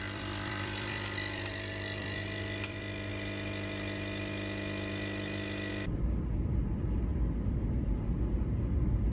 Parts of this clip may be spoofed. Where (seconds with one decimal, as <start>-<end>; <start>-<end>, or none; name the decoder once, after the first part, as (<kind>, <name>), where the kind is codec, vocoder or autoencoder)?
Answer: 0.0-3.1 (vocoder, BigVGAN v2); 5.7-9.1